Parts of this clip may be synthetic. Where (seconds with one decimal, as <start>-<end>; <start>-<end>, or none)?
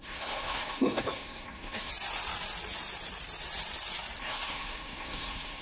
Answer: 0.0-1.9; 4.2-5.6